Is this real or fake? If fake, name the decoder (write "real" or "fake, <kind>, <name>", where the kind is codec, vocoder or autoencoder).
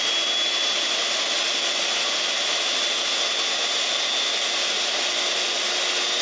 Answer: real